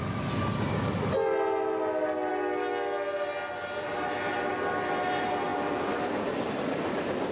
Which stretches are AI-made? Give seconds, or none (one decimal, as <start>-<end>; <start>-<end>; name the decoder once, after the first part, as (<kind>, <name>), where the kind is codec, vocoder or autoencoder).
none